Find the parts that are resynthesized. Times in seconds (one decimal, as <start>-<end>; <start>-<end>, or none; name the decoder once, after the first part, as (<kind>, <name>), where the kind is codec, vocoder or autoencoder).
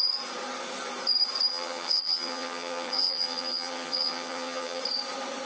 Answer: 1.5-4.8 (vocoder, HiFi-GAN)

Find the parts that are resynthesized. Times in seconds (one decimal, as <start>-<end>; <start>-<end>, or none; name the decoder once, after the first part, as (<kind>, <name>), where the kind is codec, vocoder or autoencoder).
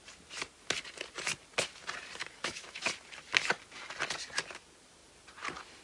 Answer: 2.2-2.8 (autoencoder, DAC-VAE)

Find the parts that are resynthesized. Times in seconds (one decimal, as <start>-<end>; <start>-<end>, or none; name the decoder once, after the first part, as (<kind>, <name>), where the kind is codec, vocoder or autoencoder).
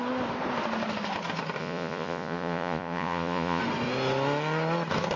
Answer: 1.6-3.6 (vocoder, Vocos)